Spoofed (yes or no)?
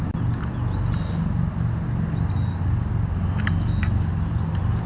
no